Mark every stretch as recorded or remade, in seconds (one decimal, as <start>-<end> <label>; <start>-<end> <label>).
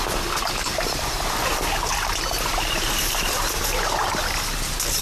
0.0-0.6 recorded; 0.6-3.6 remade; 3.6-5.0 recorded